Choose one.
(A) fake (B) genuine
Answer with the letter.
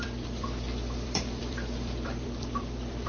A